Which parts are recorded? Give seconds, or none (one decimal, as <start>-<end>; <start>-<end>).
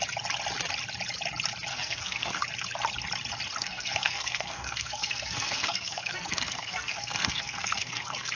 0.0-1.7; 2.4-3.6